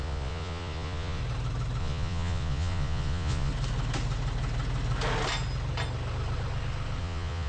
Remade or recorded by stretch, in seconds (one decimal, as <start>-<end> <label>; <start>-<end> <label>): 0.0-1.2 remade; 1.2-1.8 recorded; 1.8-3.5 remade; 3.5-7.0 recorded; 7.0-7.5 remade